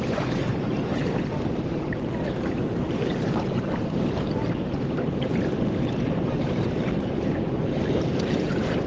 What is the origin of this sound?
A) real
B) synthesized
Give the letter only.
B